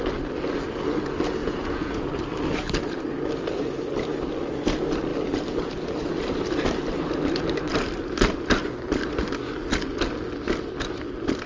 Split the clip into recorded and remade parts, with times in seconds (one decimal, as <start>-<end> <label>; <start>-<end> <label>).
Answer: 0.0-1.4 recorded; 1.4-2.1 remade; 2.1-11.5 recorded